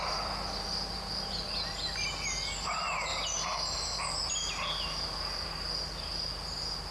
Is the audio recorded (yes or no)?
yes